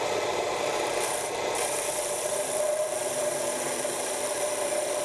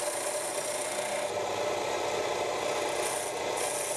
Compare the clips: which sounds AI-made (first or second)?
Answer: first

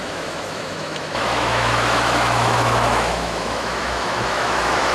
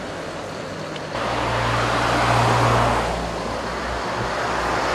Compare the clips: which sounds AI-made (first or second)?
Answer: first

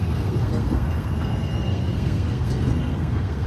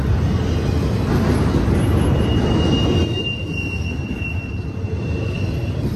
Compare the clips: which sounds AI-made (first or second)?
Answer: first